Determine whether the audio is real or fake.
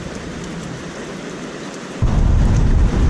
fake